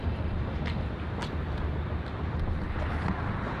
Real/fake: real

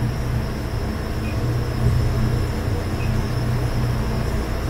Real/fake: real